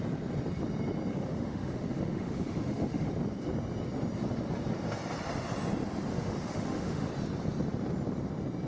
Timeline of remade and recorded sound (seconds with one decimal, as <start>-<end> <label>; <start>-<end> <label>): 0.0-1.1 recorded; 1.1-3.1 remade; 3.1-6.1 recorded; 6.1-7.1 remade; 7.1-8.7 recorded